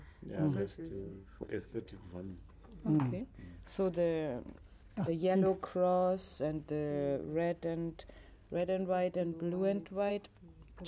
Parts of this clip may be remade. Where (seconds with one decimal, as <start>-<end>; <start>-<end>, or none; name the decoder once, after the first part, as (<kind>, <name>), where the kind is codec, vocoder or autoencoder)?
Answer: 0.8-2.5 (codec, SNAC)